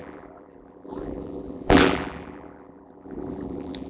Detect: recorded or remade remade